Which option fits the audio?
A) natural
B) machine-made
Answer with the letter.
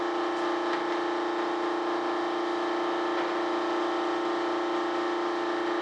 A